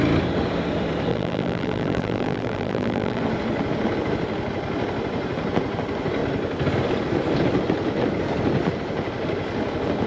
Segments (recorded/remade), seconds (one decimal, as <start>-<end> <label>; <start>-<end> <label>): 0.0-1.1 recorded; 1.1-3.2 remade; 3.2-10.1 recorded